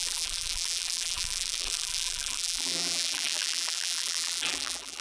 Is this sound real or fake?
fake